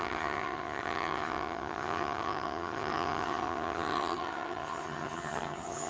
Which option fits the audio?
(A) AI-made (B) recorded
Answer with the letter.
A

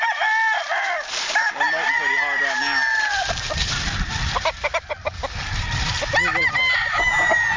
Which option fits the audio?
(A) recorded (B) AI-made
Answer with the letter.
A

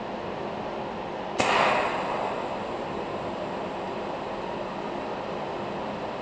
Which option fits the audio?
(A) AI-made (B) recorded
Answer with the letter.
B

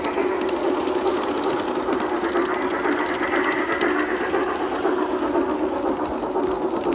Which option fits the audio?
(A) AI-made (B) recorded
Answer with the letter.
B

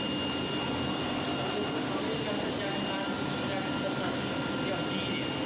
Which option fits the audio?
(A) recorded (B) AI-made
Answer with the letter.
A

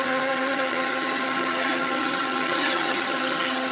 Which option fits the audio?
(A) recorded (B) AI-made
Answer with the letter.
B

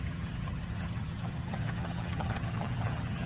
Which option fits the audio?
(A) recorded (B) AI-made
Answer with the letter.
B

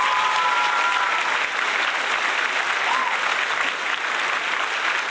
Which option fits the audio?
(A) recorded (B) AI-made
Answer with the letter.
A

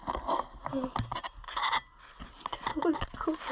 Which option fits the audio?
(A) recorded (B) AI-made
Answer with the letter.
A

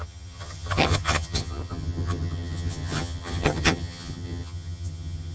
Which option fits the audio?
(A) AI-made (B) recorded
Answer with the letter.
A